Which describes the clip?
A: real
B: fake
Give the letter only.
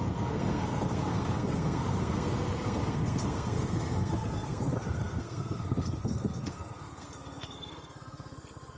B